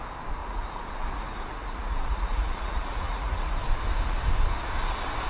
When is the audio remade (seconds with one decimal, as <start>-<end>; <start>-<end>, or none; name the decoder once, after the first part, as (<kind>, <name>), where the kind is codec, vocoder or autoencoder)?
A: 0.4-3.5 (vocoder, Vocos)